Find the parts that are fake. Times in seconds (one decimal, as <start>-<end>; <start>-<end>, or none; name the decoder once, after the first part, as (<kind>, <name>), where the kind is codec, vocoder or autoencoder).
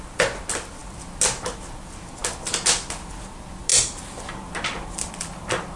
none